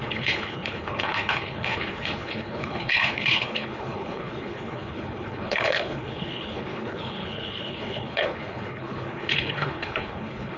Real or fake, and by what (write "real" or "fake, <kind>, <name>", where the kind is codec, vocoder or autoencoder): fake, codec, HILCodec